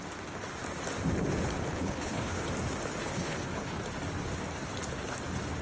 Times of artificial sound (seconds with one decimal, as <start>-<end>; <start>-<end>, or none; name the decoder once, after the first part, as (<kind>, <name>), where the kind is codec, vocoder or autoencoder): 1.7-2.4 (codec, HILCodec); 3.0-3.8

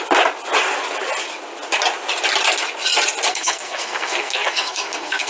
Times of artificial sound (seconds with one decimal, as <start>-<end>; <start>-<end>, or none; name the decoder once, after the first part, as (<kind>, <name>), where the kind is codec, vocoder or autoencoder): 3.3-5.3 (codec, SNAC)

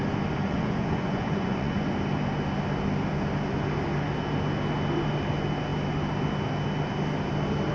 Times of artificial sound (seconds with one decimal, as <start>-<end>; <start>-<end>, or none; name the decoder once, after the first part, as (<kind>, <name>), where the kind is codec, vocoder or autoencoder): 0.4-1.9 (vocoder, Vocos)

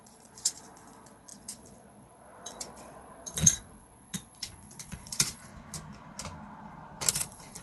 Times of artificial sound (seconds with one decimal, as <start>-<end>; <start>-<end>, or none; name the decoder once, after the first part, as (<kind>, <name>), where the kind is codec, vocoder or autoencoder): 0.0-5.5 (vocoder, Vocos); 7.1-7.6

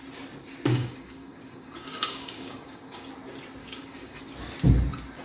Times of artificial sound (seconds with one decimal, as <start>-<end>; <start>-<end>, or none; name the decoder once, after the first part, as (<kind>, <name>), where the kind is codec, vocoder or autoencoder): 0.7-3.1 (codec, DAC); 3.6-4.2

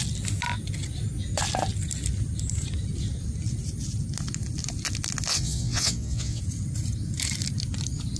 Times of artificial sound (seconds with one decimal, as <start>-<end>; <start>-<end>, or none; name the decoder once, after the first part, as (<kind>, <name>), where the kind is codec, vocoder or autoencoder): 5.3-6.4 (vocoder, WaveNeXt)

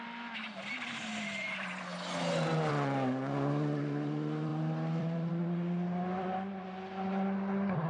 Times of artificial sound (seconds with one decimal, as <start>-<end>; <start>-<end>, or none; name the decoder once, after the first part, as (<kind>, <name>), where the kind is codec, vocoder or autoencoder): 4.5-5.3 (vocoder, BigVGAN v2)